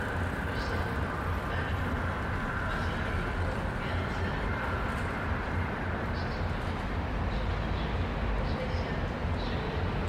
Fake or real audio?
real